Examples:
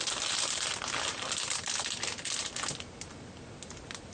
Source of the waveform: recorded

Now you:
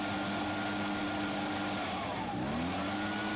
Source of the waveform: recorded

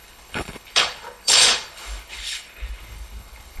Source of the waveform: remade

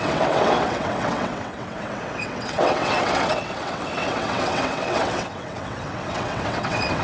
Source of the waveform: remade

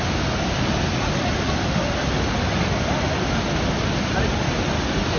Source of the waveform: recorded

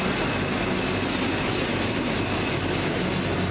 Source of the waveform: recorded